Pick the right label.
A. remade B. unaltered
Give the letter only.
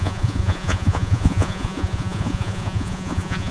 A